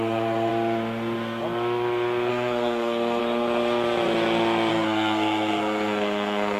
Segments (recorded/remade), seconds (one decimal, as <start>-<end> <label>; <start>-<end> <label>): 0.0-0.5 remade; 0.5-2.3 recorded; 2.3-3.2 remade; 3.2-4.7 recorded; 4.7-6.6 remade